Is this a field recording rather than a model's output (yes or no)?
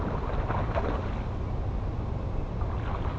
yes